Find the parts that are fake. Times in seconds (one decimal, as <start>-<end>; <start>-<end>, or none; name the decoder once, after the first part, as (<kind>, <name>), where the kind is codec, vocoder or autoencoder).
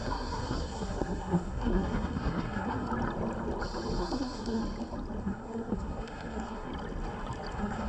0.0-2.9 (codec, SNAC); 4.0-4.6; 5.2-6.7; 7.5-7.9